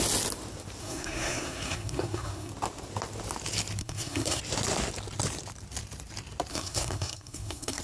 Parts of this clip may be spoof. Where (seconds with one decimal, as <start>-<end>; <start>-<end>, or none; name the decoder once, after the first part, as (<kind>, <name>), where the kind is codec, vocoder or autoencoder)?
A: 0.8-2.5 (codec, SNAC); 3.8-4.4; 6.5-7.8

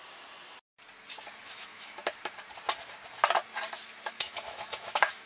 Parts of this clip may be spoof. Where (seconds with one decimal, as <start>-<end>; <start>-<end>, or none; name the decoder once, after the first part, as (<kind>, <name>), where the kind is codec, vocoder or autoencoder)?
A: 1.4-2.0 (autoencoder, DAC-VAE); 4.1-5.3

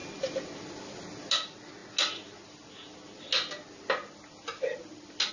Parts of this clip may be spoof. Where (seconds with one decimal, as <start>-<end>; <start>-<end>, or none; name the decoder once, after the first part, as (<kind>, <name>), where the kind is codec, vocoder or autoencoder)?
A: none

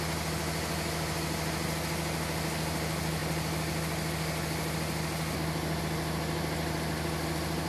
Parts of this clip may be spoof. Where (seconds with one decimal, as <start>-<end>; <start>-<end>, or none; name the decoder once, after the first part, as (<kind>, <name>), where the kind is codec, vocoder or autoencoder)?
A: none

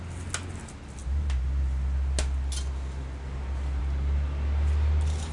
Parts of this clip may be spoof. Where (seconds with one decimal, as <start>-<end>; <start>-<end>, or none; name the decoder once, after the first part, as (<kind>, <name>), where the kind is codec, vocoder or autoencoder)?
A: none

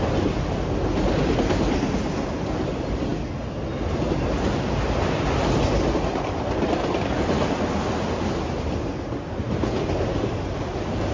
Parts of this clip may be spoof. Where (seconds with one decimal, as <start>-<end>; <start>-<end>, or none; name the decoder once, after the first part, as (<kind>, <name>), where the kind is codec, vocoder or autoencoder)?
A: none